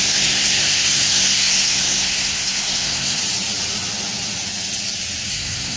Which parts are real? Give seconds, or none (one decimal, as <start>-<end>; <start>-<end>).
3.2-5.3